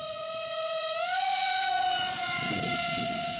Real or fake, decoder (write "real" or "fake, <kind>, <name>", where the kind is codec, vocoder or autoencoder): fake, vocoder, Vocos